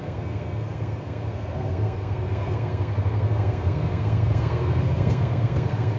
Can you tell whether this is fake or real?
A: fake